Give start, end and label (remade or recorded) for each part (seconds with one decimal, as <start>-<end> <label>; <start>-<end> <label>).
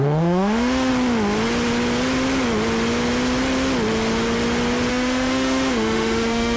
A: 0.0-0.9 remade; 0.9-4.9 recorded; 4.9-6.6 remade